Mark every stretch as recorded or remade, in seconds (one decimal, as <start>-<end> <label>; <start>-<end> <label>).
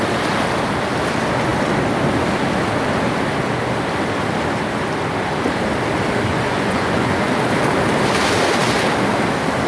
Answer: 0.0-6.3 recorded; 6.3-7.3 remade; 7.3-9.7 recorded